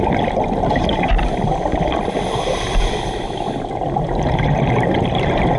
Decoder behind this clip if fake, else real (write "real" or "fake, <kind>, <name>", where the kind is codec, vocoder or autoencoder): real